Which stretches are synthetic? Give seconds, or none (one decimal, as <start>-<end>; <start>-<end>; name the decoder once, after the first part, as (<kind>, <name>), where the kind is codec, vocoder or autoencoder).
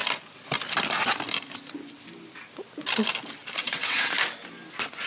3.6-4.1 (vocoder, WaveNeXt)